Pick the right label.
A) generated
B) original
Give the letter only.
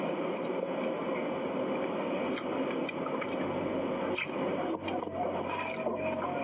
B